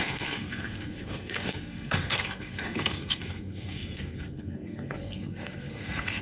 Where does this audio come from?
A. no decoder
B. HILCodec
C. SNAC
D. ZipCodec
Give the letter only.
C